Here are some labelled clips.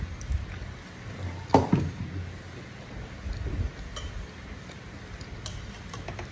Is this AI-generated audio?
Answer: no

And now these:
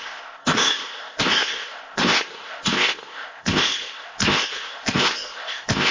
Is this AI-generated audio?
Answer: yes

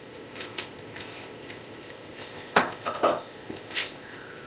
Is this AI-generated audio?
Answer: yes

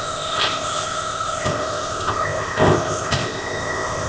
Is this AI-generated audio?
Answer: yes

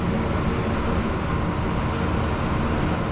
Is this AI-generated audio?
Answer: no